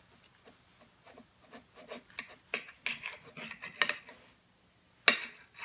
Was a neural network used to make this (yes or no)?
no